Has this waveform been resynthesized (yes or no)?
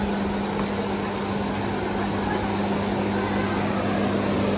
no